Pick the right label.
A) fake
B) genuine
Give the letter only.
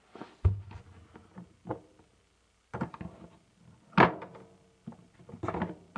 B